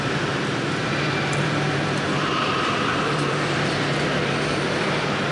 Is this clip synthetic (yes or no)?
yes